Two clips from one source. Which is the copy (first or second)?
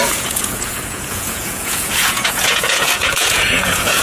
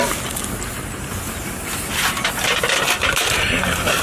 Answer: first